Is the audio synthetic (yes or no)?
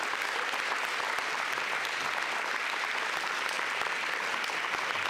no